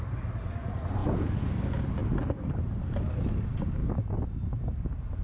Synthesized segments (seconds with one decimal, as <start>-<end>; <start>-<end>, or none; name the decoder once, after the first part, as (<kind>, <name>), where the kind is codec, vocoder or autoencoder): 1.0-1.5 (vocoder, Vocos)